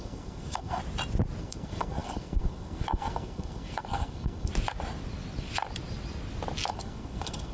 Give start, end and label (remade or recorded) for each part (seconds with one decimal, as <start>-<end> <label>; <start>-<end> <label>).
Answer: 0.0-0.8 remade; 0.8-1.4 recorded; 1.4-4.5 remade; 4.5-6.7 recorded; 6.7-7.5 remade